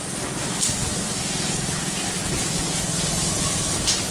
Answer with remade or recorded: recorded